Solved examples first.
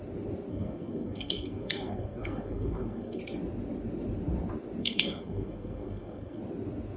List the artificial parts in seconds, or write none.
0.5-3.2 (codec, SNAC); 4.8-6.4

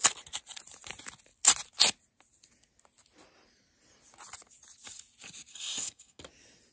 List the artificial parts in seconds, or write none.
5.5-6.2 (codec, SNAC)

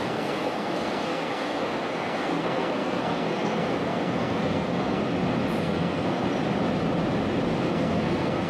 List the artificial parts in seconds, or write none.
0.0-5.0 (codec, SNAC); 5.6-6.2; 7.6-8.5

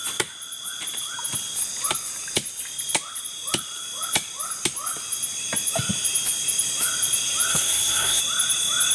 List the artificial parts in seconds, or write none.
7.5-8.2 (codec, SNAC)

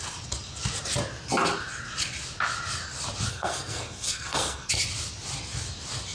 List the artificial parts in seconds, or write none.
3.3-4.7 (codec, SNAC)

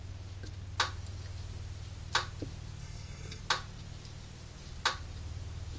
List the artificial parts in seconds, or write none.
2.8-3.4 (codec, SNAC)